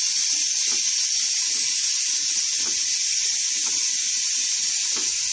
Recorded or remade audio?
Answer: recorded